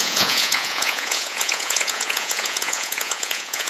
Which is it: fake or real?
fake